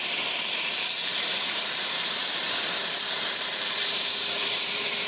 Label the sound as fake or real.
fake